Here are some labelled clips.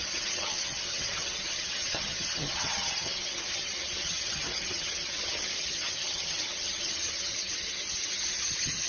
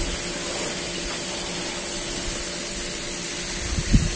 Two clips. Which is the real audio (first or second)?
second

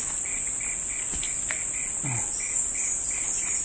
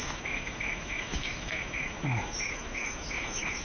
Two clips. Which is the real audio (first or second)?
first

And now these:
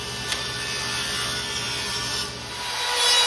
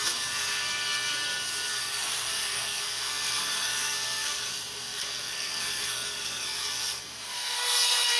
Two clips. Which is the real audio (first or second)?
first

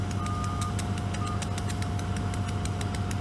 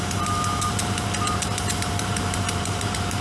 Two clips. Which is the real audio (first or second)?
first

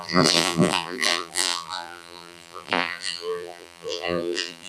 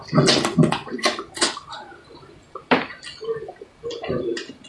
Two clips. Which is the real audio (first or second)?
second